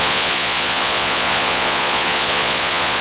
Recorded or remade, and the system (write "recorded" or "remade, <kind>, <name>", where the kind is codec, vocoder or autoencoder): remade, vocoder, Vocos